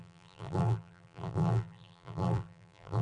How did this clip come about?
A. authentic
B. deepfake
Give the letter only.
B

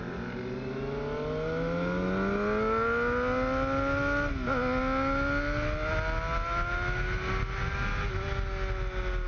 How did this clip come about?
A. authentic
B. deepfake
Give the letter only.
A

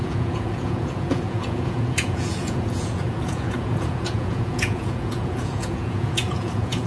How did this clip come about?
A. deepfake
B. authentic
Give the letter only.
A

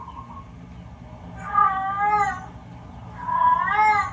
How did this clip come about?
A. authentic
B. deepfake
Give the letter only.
A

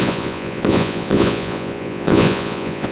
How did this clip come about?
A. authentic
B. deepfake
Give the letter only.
B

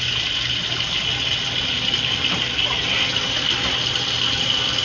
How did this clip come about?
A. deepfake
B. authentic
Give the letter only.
B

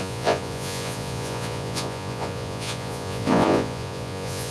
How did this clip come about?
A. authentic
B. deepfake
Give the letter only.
B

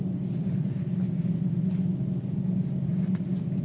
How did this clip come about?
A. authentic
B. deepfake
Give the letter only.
A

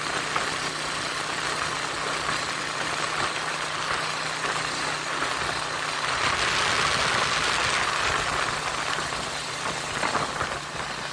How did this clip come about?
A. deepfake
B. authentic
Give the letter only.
B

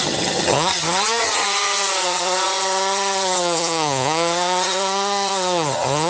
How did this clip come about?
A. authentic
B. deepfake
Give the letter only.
B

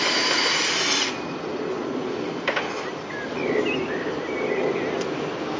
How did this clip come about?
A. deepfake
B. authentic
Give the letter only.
B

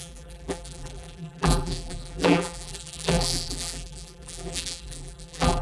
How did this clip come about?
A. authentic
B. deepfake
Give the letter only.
B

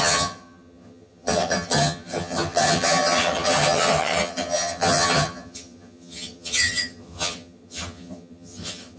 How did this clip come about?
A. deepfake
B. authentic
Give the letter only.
A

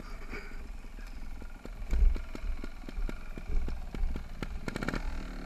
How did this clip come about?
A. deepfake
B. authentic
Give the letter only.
B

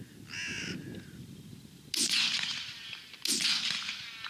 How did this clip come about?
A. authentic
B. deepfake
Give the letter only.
A